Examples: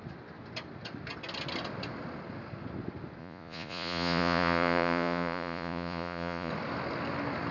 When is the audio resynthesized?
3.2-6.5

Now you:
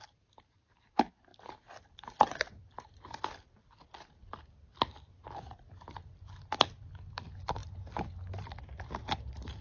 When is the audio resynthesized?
none